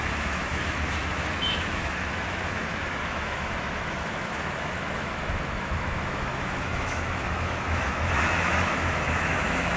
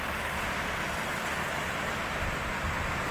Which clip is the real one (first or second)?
second